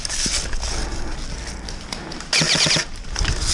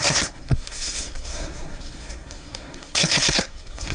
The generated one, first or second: second